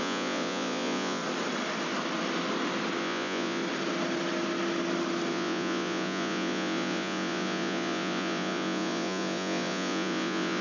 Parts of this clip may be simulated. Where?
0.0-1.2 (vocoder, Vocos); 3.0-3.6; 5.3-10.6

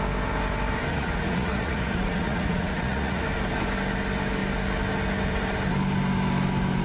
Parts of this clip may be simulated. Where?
0.9-3.2 (vocoder, Vocos)

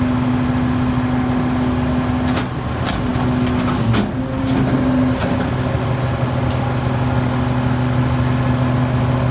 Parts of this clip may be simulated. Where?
none

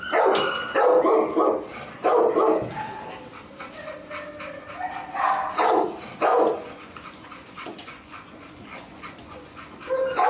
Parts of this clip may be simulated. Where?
6.3-9.7 (vocoder, Vocos)